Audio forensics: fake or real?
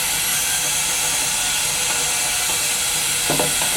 real